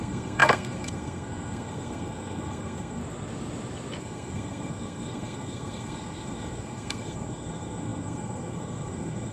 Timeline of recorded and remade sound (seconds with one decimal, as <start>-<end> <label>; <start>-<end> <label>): 0.0-3.0 remade; 3.0-4.0 recorded; 4.0-9.3 remade